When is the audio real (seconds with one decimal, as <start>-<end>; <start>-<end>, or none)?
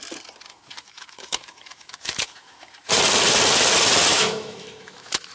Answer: 0.0-0.5; 2.9-4.1